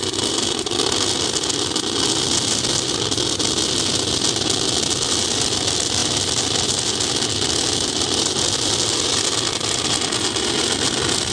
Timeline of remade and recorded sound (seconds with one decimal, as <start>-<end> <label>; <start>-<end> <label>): 0.0-11.3 recorded